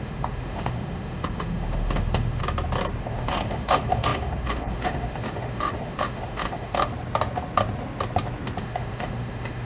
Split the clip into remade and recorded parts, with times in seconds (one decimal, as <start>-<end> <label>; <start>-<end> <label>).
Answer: 0.0-2.4 remade; 2.4-3.0 recorded; 3.0-6.9 remade; 6.9-8.6 recorded; 8.6-9.7 remade